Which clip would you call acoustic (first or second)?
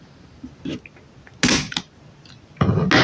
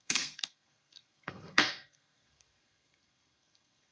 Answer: first